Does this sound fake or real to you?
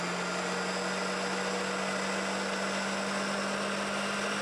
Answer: real